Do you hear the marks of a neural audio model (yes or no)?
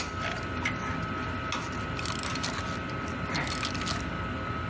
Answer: no